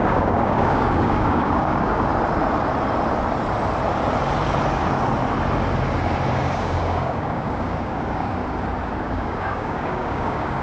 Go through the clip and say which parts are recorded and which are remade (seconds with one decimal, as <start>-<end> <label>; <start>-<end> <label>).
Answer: 0.0-2.1 remade; 2.1-6.3 recorded; 6.3-8.4 remade; 8.4-9.0 recorded; 9.0-10.6 remade